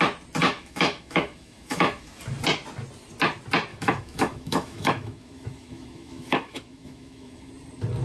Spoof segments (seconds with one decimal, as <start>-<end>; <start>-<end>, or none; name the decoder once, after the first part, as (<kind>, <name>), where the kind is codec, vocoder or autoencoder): 0.4-2.2 (autoencoder, DAC-VAE); 3.7-7.5